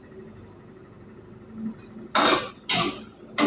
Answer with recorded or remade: recorded